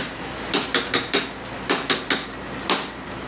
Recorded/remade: recorded